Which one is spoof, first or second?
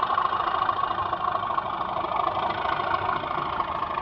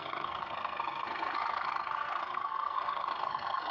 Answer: second